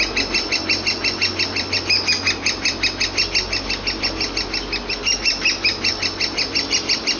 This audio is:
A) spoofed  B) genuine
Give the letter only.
B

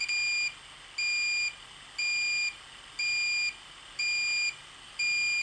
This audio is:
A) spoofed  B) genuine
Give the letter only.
B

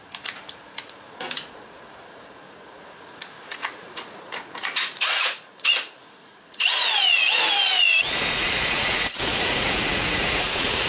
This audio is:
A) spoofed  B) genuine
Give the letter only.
A